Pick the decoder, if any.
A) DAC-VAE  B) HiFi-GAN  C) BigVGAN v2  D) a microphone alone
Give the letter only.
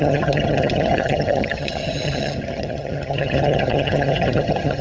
B